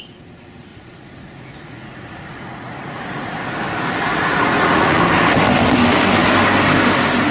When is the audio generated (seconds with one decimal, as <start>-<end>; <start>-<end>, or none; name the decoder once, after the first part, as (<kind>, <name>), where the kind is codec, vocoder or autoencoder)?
0.7-3.4 (vocoder, Vocos); 4.1-5.0